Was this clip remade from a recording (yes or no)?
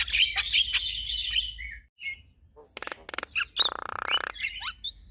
no